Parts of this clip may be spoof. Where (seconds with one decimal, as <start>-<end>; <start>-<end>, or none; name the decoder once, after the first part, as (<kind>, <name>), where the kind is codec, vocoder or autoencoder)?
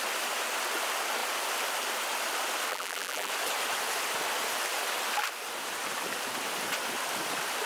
2.7-3.3 (vocoder, BigVGAN v2)